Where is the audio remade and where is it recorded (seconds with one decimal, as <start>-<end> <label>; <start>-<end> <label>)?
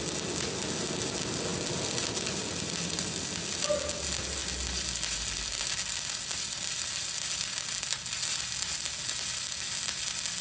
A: 0.0-10.4 recorded